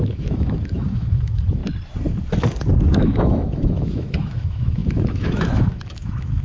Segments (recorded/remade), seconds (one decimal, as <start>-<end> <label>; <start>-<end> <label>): 0.0-1.6 remade; 1.6-2.9 recorded; 2.9-6.4 remade